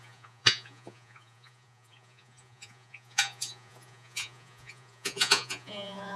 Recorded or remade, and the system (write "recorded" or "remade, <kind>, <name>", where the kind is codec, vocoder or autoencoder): remade, vocoder, Vocos